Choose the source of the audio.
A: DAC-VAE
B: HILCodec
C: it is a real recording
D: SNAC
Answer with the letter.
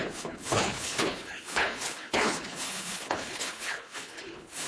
B